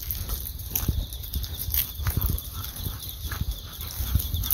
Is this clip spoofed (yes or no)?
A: no